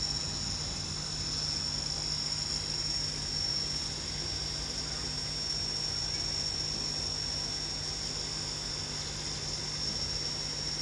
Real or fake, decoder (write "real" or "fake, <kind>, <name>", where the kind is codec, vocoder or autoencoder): real